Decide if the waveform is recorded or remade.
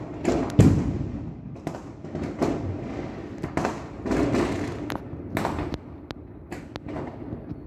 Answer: recorded